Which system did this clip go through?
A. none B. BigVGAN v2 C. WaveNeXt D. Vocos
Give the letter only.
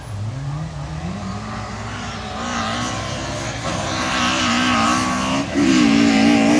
A